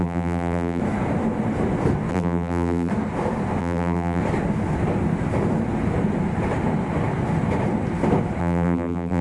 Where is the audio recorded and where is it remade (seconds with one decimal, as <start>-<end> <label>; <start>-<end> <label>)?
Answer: 0.0-0.8 remade; 0.8-2.1 recorded; 2.1-2.9 remade; 2.9-3.6 recorded; 3.6-4.2 remade; 4.2-8.4 recorded; 8.4-9.2 remade